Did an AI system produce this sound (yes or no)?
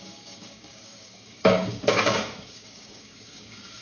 yes